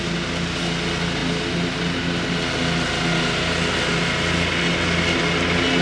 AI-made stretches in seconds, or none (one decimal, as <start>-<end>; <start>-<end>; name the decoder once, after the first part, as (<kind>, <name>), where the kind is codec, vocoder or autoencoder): none